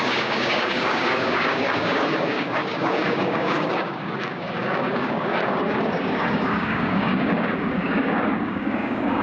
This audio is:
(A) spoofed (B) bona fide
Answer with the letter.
A